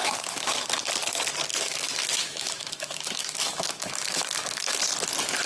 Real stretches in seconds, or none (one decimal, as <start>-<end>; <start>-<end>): 0.7-1.5; 4.8-5.5